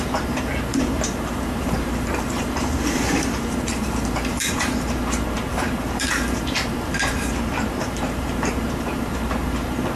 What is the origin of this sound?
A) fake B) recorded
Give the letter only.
A